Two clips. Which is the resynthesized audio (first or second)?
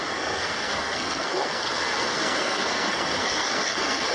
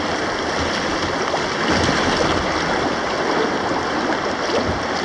first